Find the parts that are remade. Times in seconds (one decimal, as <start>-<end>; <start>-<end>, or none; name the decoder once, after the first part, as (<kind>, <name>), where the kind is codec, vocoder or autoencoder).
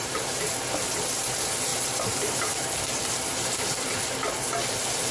0.0-0.5 (vocoder, BigVGAN v2); 1.7-3.6